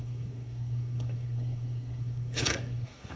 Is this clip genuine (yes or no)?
no